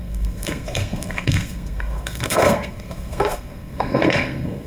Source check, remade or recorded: remade